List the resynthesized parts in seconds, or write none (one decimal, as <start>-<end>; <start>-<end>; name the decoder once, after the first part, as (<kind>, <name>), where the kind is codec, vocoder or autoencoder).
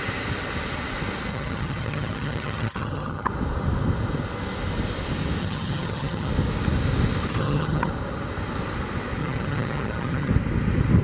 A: 1.3-3.3 (vocoder, HiFi-GAN); 5.4-6.3; 7.4-7.9; 9.2-10.3